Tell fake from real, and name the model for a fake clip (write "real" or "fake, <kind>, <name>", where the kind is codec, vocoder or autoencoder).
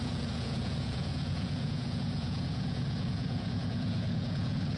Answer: fake, vocoder, Vocos